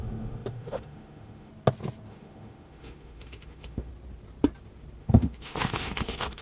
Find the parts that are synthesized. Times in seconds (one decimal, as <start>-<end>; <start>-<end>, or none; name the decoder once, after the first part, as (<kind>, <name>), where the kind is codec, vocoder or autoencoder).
0.0-1.5 (autoencoder, DAC-VAE); 2.1-3.9; 5.0-6.4